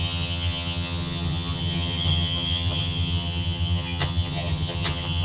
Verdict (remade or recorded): remade